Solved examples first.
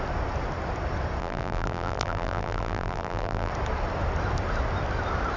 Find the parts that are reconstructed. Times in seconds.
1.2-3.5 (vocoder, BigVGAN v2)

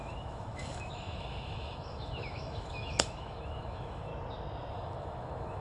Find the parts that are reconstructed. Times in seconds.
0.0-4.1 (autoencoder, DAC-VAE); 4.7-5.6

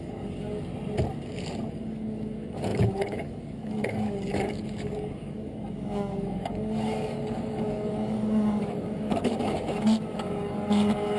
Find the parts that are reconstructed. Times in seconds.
0.0-0.7 (codec, DAC); 1.7-11.2

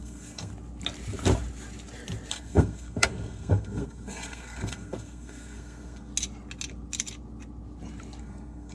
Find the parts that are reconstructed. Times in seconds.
0.0-0.5 (codec, SNAC); 2.3-6.1; 8.2-8.7

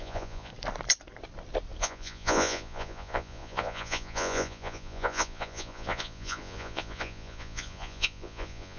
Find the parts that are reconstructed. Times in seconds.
0.0-0.5 (vocoder, Vocos); 1.8-8.8

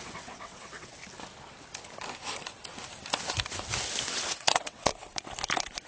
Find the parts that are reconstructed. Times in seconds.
0.0-1.0 (vocoder, WaveNeXt); 4.0-4.9

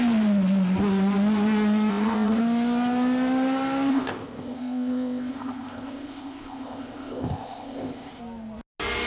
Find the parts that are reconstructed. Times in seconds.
1.9-2.4 (codec, ZipCodec); 3.9-8.2